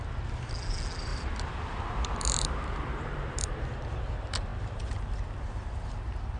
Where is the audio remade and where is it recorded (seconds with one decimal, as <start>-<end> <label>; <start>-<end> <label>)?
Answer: 0.0-1.1 recorded; 1.1-3.5 remade; 3.5-6.4 recorded